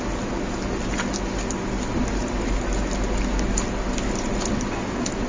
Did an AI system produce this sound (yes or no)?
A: no